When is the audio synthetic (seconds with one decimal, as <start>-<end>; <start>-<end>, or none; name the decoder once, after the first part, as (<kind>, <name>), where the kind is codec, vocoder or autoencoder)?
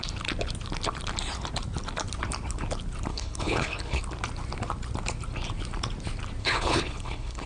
3.1-4.0 (codec, HILCodec); 6.4-7.5